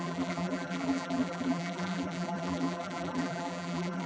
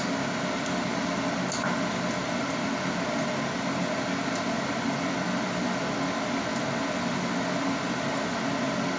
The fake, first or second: first